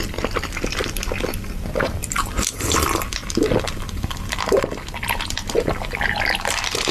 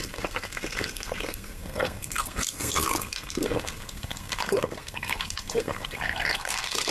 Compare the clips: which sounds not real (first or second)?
second